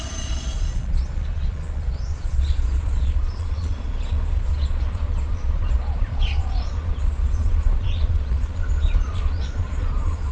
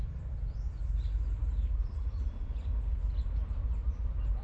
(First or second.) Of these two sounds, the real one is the second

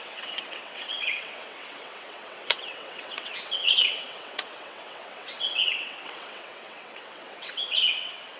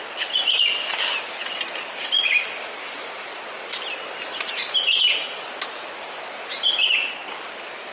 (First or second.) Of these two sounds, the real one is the second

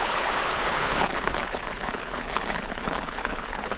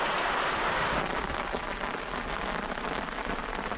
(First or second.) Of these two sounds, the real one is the second